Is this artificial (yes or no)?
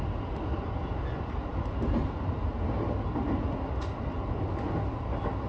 no